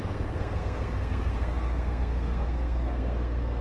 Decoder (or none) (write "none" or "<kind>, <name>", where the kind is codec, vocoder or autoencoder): codec, SNAC